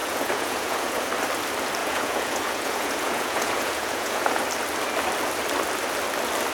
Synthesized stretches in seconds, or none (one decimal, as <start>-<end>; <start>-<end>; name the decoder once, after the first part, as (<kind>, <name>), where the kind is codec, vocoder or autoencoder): 0.0-1.1 (vocoder, Vocos); 1.8-4.4

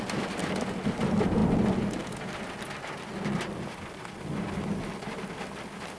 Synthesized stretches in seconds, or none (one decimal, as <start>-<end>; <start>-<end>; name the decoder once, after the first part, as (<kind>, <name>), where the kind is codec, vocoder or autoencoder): none

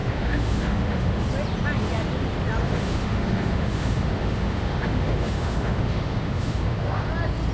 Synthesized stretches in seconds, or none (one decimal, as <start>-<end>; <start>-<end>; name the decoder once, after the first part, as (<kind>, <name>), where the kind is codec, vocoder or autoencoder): 0.0-1.2 (autoencoder, DAC-VAE); 2.6-7.1

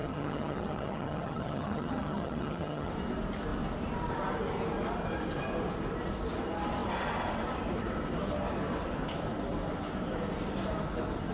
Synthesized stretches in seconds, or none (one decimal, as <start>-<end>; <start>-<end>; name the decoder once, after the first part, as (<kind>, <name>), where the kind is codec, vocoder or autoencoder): 0.0-2.9 (vocoder, HiFi-GAN)

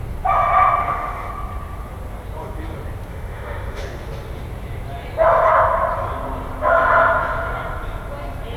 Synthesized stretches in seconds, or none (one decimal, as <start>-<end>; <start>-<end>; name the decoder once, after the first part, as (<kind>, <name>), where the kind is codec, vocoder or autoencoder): 0.8-1.3 (autoencoder, DAC-VAE); 3.1-3.8

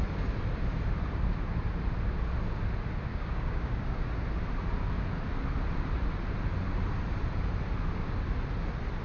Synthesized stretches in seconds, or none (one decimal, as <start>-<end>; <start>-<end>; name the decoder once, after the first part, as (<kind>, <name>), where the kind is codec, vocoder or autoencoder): 3.1-4.1 (codec, DAC)

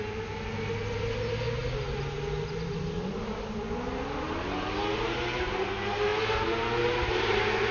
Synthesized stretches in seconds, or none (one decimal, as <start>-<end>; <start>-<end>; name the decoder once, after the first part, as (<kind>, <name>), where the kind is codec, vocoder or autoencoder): none

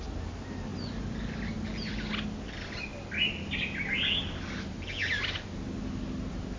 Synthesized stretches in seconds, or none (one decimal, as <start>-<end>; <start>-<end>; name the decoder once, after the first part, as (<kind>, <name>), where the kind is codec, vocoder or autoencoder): none